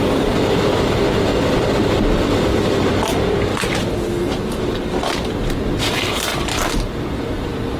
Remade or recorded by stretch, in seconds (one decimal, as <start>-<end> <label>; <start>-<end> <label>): 0.0-1.3 remade; 1.3-2.9 recorded; 2.9-3.5 remade; 3.5-4.5 recorded; 4.5-6.3 remade; 6.3-7.3 recorded; 7.3-7.8 remade